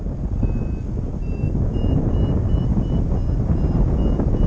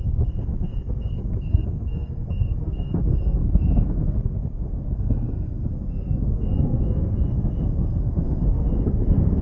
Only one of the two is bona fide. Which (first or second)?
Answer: first